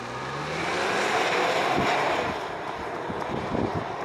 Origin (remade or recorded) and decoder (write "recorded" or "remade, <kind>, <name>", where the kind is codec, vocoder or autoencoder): recorded